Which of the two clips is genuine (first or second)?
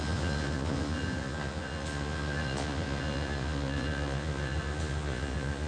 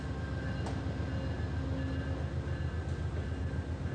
second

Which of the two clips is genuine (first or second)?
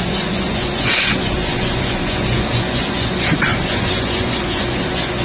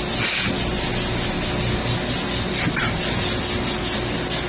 second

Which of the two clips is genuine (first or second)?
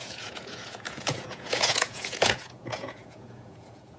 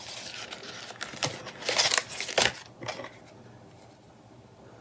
second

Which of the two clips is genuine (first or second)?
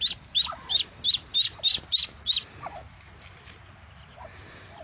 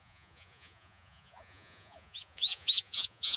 first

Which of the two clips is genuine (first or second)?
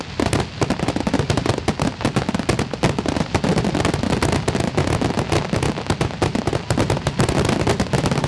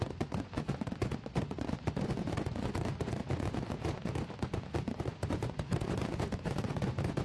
first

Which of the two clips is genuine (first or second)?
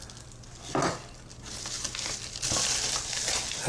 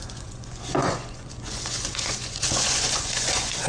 first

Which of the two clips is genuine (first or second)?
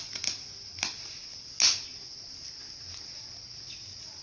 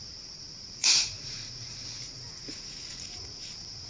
first